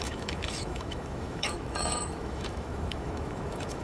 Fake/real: fake